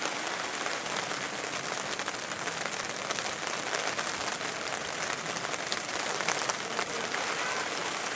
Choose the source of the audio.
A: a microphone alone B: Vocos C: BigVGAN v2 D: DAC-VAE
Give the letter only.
A